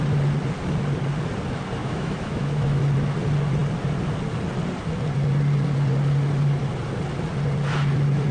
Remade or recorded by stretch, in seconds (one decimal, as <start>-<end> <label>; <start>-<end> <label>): 0.0-1.8 recorded; 1.8-2.8 remade; 2.8-8.3 recorded